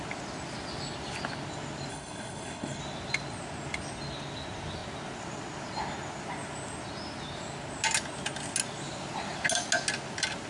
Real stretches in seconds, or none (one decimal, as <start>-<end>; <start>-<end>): 0.0-1.9; 2.8-10.5